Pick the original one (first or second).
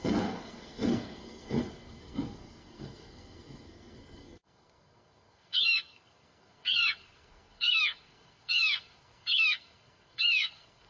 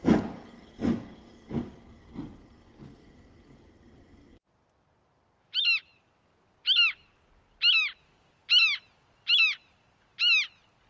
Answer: second